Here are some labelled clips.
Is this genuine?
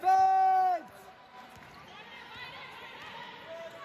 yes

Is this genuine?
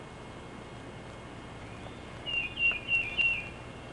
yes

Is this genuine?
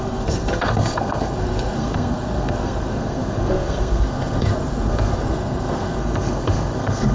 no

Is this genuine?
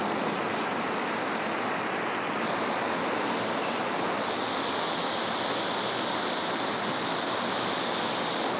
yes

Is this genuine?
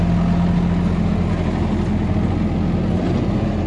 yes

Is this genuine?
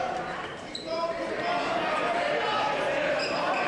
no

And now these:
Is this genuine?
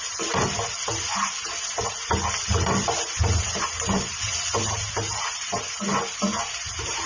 yes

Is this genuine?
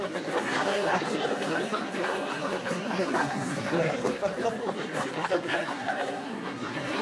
no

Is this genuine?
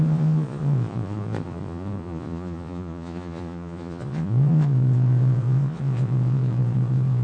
no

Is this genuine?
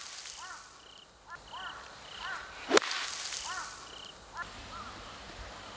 yes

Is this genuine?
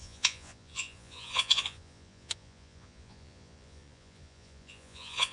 no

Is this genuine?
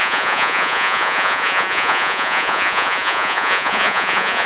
no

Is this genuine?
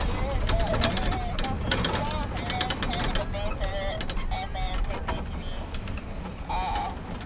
yes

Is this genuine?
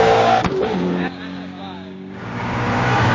no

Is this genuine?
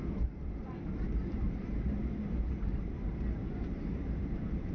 no